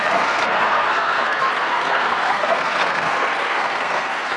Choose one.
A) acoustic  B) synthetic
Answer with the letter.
B